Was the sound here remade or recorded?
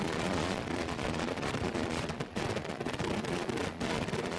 remade